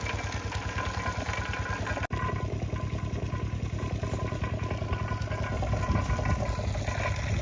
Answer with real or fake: real